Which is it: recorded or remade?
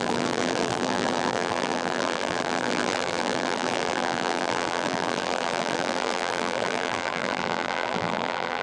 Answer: remade